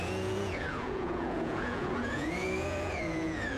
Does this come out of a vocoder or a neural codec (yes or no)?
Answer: yes